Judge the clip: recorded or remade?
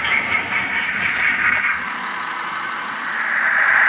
remade